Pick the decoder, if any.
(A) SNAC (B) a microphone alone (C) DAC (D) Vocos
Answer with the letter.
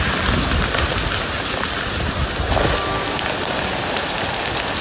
B